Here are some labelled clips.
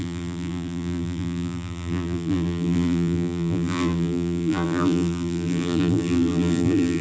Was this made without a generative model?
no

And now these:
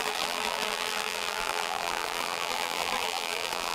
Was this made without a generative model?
no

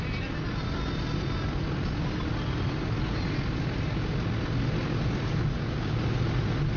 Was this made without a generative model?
yes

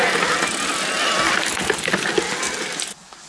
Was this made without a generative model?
yes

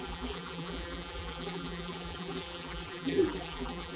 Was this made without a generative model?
no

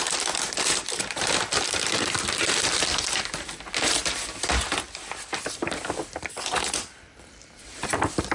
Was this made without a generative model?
no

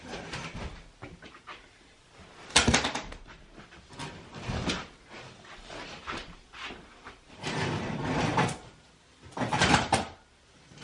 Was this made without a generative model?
no